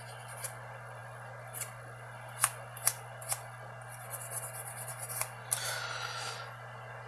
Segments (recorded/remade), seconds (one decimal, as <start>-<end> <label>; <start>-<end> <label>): 0.0-7.1 recorded